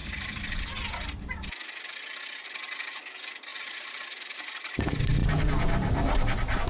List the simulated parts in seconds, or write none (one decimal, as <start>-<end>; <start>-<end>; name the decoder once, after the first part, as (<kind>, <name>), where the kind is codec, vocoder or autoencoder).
0.0-0.6 (vocoder, BigVGAN v2); 3.5-4.5